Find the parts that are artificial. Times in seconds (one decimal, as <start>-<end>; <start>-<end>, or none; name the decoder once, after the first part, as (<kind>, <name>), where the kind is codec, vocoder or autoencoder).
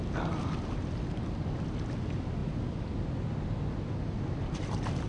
none